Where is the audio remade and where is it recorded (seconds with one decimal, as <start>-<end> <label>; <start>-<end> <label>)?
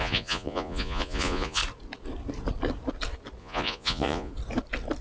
0.0-1.6 remade; 1.6-3.4 recorded; 3.4-4.3 remade; 4.3-5.0 recorded